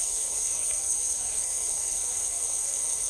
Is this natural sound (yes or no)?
no